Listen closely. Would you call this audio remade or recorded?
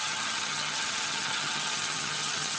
remade